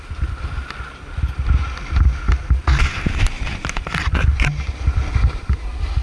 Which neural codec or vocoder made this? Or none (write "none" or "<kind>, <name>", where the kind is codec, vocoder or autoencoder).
none